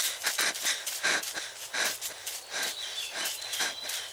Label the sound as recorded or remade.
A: remade